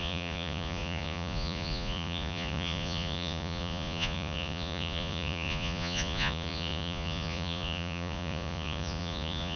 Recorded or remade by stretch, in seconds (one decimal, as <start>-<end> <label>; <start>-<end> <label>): 0.0-9.6 remade